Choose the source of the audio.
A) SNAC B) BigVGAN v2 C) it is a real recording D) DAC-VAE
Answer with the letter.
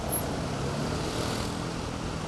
C